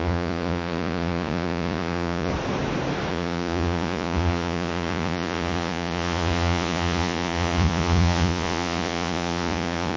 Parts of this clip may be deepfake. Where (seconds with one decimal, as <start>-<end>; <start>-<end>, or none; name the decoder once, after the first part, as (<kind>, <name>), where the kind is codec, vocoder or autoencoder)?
0.0-2.3 (vocoder, Vocos); 3.1-10.0